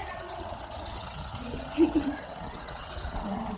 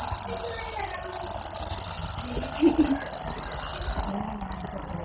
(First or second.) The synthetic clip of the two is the first